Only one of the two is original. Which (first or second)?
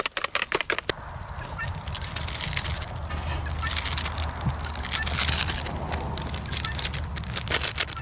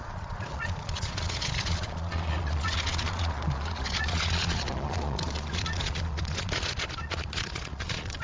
first